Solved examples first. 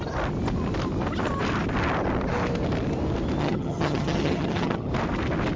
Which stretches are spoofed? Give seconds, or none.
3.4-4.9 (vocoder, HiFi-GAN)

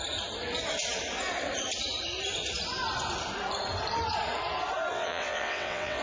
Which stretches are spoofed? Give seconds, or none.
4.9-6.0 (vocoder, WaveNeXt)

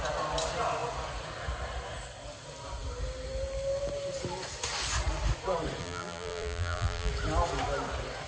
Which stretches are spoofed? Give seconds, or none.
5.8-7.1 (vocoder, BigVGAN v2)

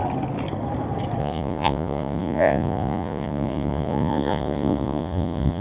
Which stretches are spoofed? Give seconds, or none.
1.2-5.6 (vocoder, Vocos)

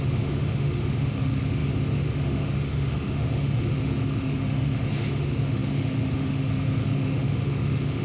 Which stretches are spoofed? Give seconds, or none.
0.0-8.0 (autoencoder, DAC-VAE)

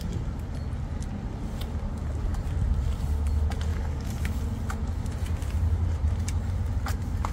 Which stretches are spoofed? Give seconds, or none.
3.7-4.4 (codec, DAC)

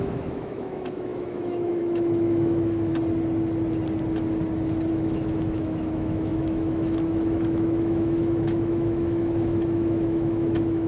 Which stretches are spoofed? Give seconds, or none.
0.0-2.9 (autoencoder, DAC-VAE); 4.9-10.9

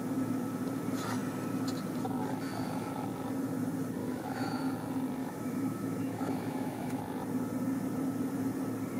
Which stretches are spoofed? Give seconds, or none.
4.0-4.6 (autoencoder, DAC-VAE); 5.2-7.0